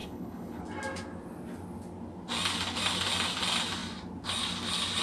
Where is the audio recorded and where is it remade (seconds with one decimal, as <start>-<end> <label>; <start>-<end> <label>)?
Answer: 0.0-0.6 remade; 0.6-5.0 recorded